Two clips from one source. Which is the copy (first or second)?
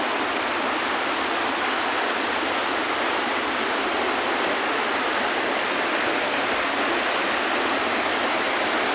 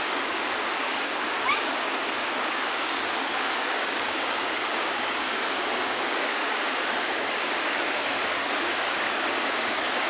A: second